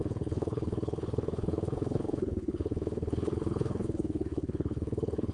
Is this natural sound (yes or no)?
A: no